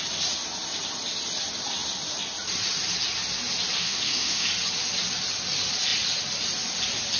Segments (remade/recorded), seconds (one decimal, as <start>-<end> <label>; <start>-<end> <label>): 0.0-3.8 recorded; 3.8-4.5 remade; 4.5-7.2 recorded